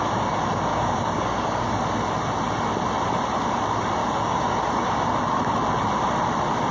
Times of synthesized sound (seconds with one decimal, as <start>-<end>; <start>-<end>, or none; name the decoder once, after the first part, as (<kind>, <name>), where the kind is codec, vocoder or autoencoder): 0.7-1.7 (codec, DAC); 4.0-4.6